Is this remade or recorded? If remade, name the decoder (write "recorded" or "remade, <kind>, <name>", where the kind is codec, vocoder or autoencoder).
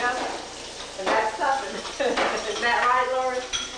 recorded